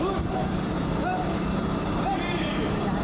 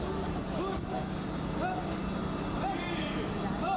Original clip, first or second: second